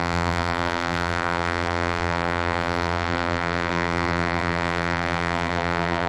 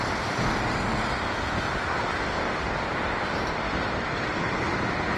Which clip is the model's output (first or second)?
first